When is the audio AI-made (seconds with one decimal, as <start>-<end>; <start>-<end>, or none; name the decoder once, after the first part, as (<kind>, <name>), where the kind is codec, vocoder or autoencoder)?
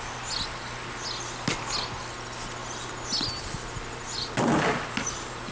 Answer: none